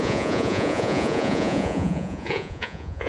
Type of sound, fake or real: fake